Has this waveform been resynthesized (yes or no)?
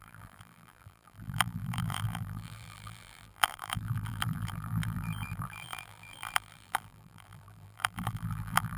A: yes